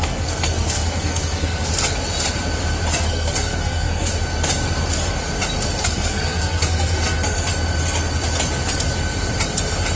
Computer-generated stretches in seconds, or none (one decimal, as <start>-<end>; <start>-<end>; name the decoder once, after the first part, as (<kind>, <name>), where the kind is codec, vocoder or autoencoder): 0.0-1.7 (codec, SNAC); 2.9-4.1; 5.8-7.5